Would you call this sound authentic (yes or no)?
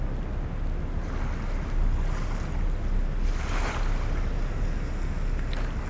yes